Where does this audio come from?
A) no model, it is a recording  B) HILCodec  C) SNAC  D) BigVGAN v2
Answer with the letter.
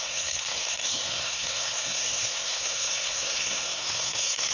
C